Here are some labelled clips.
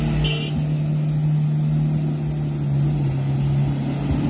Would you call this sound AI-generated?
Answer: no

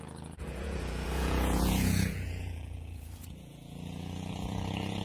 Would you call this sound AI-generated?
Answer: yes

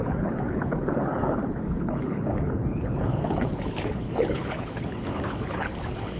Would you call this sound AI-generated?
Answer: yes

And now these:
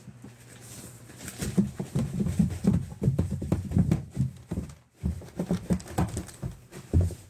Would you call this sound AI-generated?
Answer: no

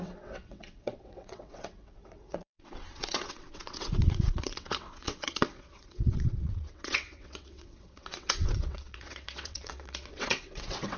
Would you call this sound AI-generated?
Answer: yes